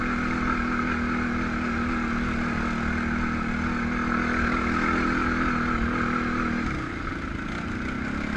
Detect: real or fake real